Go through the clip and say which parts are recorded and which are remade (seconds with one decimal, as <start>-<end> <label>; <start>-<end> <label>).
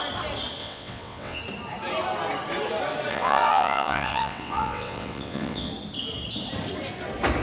0.0-0.6 recorded; 0.6-1.4 remade; 1.4-3.1 recorded; 3.1-5.7 remade; 5.7-7.4 recorded